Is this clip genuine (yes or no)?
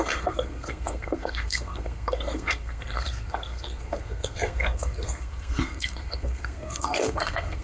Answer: no